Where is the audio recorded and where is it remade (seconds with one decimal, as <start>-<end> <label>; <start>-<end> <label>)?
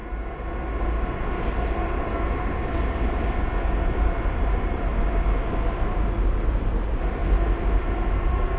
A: 0.0-4.4 recorded; 4.4-4.9 remade; 4.9-6.4 recorded; 6.4-7.2 remade; 7.2-8.1 recorded; 8.1-8.6 remade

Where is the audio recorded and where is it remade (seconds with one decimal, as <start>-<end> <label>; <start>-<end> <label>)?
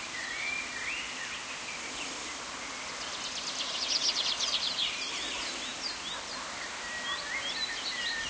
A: 0.0-8.3 recorded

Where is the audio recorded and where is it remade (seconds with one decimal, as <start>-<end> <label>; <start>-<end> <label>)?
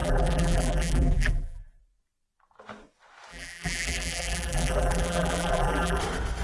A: 0.0-1.8 remade; 1.8-3.3 recorded; 3.3-6.0 remade; 6.0-6.4 recorded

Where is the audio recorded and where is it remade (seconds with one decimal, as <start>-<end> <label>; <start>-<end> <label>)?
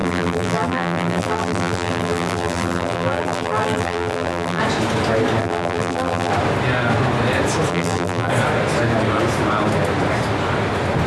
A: 0.0-4.6 remade; 4.6-5.4 recorded; 5.4-6.3 remade; 6.3-7.7 recorded; 7.7-8.3 remade; 8.3-11.1 recorded